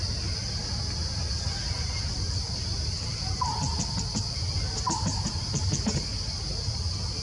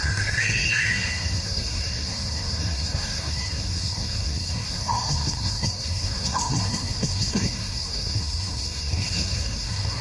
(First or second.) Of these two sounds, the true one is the first